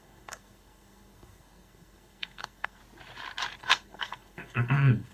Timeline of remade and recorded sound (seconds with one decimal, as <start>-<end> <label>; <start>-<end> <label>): 0.0-2.8 remade; 2.8-3.6 recorded; 3.6-5.1 remade